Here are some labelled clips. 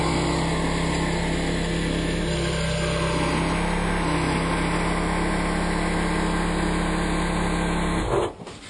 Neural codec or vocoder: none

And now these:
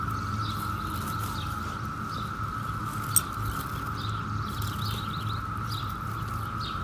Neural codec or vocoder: none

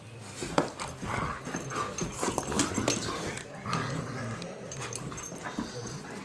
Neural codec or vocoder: none